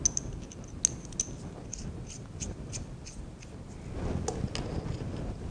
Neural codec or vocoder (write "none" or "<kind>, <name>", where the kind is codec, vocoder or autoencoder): none